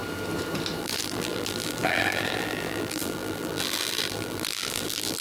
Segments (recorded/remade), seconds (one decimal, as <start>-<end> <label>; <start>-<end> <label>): 0.0-0.8 recorded; 0.8-5.2 remade